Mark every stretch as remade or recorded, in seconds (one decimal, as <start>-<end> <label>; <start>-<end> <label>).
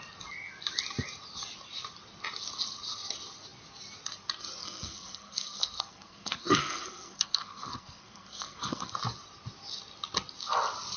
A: 0.0-4.6 recorded; 4.6-8.9 remade; 8.9-11.0 recorded